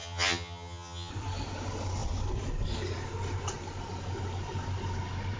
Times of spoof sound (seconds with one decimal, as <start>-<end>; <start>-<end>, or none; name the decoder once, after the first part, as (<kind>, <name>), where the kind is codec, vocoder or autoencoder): 0.0-1.1 (vocoder, HiFi-GAN)